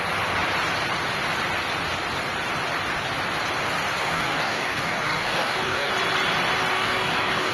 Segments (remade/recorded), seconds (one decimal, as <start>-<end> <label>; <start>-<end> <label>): 0.0-4.0 recorded; 4.0-5.9 remade; 5.9-6.7 recorded; 6.7-7.5 remade